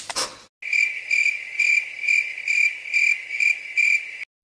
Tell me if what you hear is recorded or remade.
recorded